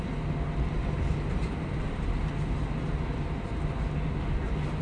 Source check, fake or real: real